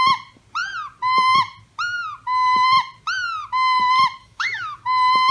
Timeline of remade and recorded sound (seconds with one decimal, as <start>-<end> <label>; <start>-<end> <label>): 0.0-4.2 recorded; 4.2-4.8 remade; 4.8-5.3 recorded